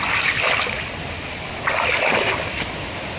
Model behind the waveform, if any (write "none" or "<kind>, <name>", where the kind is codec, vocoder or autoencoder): none